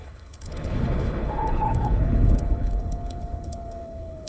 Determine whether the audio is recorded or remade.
remade